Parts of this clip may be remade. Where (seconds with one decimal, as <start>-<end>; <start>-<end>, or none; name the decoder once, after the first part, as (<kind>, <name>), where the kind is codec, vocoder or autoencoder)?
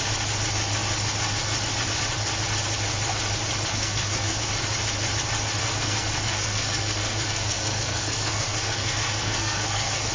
3.7-4.4 (codec, SNAC); 5.6-10.1